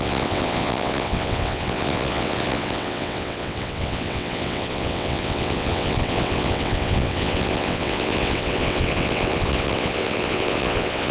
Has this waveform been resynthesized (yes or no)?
yes